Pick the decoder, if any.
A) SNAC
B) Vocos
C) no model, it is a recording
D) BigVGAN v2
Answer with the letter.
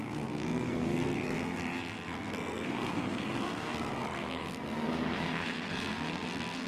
A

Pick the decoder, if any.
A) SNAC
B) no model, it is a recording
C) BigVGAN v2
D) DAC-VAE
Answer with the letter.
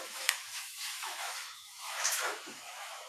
D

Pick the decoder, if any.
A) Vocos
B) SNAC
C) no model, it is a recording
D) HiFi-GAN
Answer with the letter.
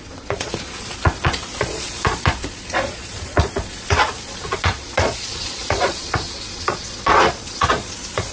A